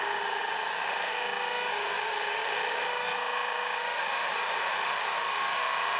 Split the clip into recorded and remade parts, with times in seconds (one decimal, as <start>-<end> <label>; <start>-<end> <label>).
0.0-6.0 remade